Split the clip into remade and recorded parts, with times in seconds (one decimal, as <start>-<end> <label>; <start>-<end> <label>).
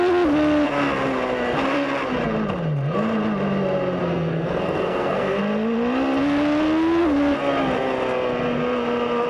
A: 0.0-4.0 recorded; 4.0-5.4 remade; 5.4-9.3 recorded